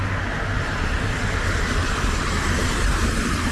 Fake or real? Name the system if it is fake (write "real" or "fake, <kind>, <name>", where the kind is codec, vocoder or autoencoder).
real